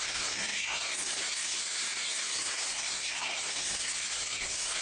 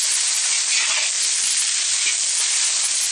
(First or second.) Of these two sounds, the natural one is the second